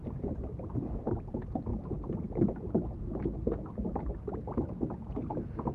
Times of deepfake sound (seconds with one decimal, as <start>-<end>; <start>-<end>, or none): 0.0-1.1; 1.7-5.1